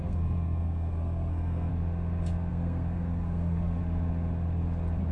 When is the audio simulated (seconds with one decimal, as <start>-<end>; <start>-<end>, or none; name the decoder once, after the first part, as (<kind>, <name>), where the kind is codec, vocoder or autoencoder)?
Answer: 0.0-1.7 (codec, SNAC); 2.5-3.8